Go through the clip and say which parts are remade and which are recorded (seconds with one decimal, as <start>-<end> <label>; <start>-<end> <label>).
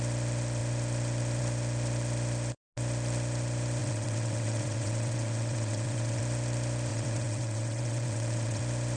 0.0-3.8 recorded; 3.8-6.2 remade; 6.2-6.9 recorded; 6.9-8.6 remade; 8.6-9.0 recorded